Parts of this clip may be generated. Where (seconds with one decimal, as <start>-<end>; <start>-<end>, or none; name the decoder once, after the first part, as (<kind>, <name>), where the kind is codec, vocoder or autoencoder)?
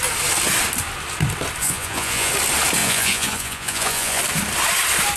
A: 1.6-2.3 (vocoder, Vocos); 2.8-4.2